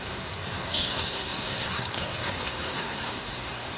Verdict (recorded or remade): remade